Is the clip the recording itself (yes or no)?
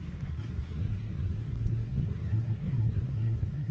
no